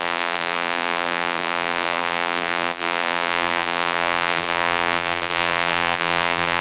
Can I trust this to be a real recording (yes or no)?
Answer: no